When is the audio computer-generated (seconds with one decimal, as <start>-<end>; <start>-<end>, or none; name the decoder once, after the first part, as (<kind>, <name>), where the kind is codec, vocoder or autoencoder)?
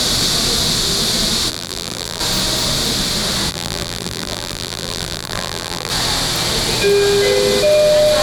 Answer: 1.5-2.2 (vocoder, BigVGAN v2); 3.5-5.9